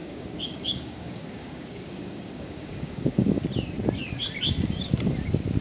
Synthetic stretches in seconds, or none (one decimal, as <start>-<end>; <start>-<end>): 0.0-3.4